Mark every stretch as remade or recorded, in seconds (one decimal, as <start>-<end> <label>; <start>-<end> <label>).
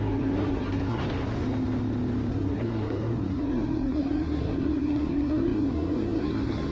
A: 0.0-1.0 remade; 1.0-2.3 recorded; 2.3-6.7 remade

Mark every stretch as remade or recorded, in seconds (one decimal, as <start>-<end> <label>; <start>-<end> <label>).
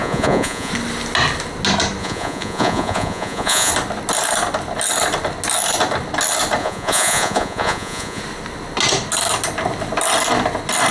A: 0.0-0.7 remade; 0.7-2.0 recorded; 2.0-3.7 remade; 3.7-6.6 recorded; 6.6-8.2 remade; 8.2-10.9 recorded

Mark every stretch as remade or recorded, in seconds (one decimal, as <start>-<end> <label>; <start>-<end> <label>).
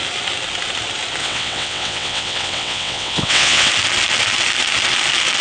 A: 0.0-1.2 recorded; 1.2-3.7 remade; 3.7-5.4 recorded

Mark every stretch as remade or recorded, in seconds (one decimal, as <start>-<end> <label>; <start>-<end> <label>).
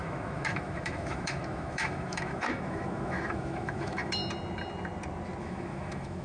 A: 0.0-4.2 remade; 4.2-5.4 recorded; 5.4-6.2 remade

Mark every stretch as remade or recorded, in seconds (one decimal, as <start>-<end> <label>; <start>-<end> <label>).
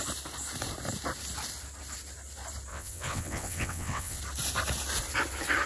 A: 0.0-2.7 recorded; 2.7-4.2 remade; 4.2-5.7 recorded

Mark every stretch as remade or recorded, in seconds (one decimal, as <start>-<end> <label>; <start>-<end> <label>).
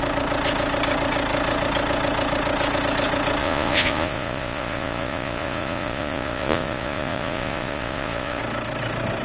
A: 0.0-3.4 recorded; 3.4-8.4 remade; 8.4-9.2 recorded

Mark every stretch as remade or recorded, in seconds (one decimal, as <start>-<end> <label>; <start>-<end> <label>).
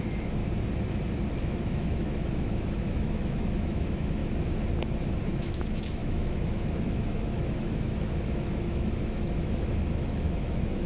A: 0.0-0.4 remade; 0.4-1.4 recorded; 1.4-4.2 remade; 4.2-5.2 recorded; 5.2-10.9 remade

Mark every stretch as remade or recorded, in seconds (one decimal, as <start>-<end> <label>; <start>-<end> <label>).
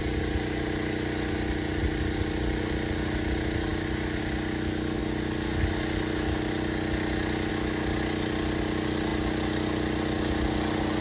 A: 0.0-11.0 recorded